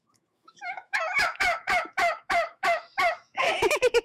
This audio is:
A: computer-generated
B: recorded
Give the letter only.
A